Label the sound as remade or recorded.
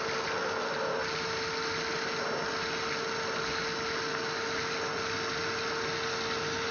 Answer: recorded